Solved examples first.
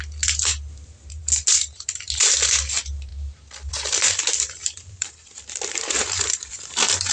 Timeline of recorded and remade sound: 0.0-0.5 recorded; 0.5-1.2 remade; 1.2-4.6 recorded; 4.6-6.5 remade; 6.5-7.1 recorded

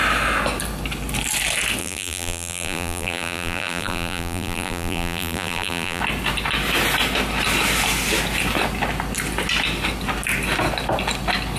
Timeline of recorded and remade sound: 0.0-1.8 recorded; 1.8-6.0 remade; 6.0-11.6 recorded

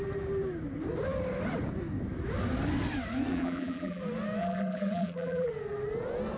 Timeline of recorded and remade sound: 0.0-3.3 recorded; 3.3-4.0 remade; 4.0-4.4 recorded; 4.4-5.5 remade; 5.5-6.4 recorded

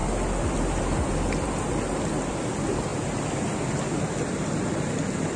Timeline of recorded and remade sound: 0.0-5.4 recorded

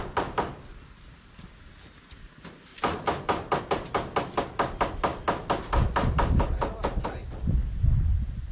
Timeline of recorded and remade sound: 0.0-2.7 recorded; 2.7-3.6 remade; 3.6-8.5 recorded

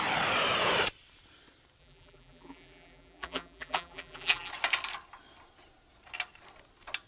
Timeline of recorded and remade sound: 0.0-1.8 recorded; 1.8-4.5 remade; 4.5-7.1 recorded

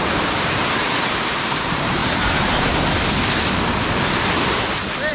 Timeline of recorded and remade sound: 0.0-2.0 remade; 2.0-5.1 recorded